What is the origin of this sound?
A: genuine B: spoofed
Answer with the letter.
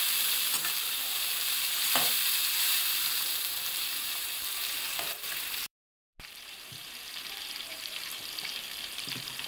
B